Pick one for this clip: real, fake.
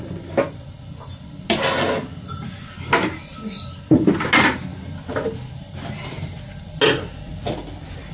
real